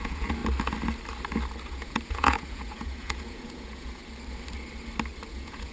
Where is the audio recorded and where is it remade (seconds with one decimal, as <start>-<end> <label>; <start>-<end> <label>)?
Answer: 0.0-0.4 remade; 0.4-1.7 recorded; 1.7-4.0 remade; 4.0-5.3 recorded; 5.3-5.7 remade

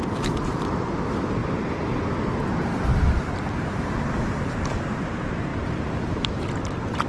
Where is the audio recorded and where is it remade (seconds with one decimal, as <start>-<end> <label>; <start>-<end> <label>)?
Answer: 0.0-1.4 remade; 1.4-2.4 recorded; 2.4-2.9 remade; 2.9-5.0 recorded; 5.0-5.5 remade; 5.5-7.1 recorded

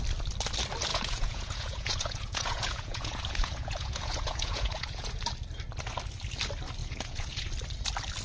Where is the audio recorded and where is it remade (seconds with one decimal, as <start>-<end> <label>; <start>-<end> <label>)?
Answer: 0.0-0.9 recorded; 0.9-5.1 remade; 5.1-6.8 recorded; 6.8-7.5 remade; 7.5-8.2 recorded

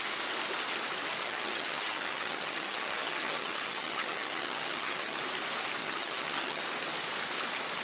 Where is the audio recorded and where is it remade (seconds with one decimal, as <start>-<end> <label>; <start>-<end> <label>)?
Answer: 0.0-1.2 recorded; 1.2-5.2 remade; 5.2-5.8 recorded; 5.8-6.6 remade; 6.6-7.8 recorded

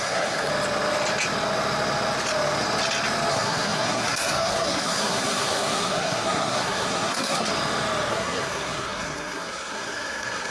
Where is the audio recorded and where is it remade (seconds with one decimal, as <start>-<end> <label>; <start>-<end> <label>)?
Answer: 0.0-0.5 remade; 0.5-3.3 recorded; 3.3-7.5 remade; 7.5-8.1 recorded; 8.1-10.5 remade